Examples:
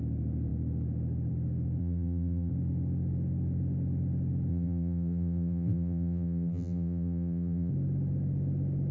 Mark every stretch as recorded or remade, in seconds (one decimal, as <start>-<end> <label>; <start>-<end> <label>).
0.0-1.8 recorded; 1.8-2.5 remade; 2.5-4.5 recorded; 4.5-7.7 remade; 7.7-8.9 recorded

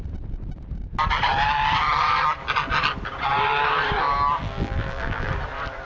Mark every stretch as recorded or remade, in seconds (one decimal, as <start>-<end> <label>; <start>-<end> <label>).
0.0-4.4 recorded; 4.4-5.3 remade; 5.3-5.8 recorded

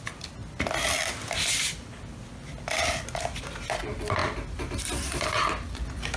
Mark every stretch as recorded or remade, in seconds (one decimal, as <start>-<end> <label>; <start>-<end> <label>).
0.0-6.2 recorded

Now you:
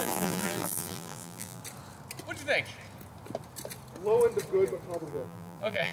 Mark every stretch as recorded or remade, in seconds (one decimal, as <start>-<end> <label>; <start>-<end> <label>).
0.0-1.6 remade; 1.6-5.1 recorded; 5.1-5.9 remade

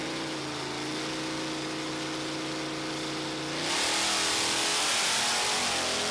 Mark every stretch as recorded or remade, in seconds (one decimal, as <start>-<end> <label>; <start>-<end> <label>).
0.0-6.1 recorded